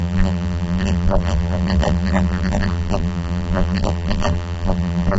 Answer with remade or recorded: remade